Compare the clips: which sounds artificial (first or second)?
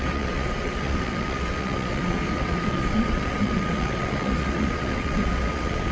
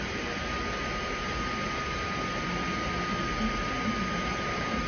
first